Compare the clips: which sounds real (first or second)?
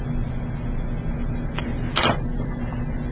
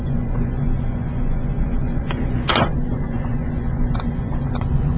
first